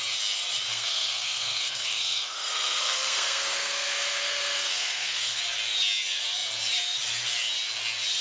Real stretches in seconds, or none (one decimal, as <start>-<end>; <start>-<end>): 0.0-0.7; 5.4-8.2